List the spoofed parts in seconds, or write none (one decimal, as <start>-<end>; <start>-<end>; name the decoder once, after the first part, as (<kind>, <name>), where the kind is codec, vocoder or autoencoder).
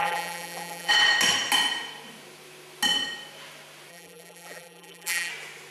0.0-0.9 (vocoder, BigVGAN v2); 3.9-5.3